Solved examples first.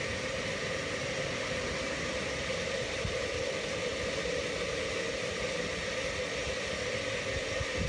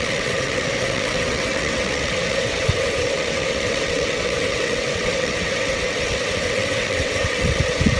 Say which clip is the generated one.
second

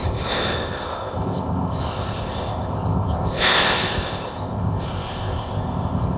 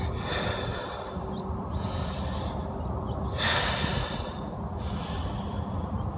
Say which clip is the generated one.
first